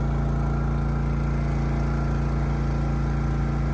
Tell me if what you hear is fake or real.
real